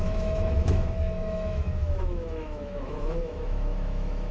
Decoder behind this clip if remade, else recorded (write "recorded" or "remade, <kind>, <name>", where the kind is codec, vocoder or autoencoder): remade, autoencoder, DAC-VAE